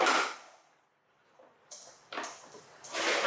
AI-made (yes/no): no